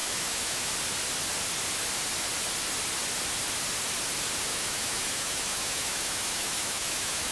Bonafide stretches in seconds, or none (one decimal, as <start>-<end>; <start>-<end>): 0.7-4.5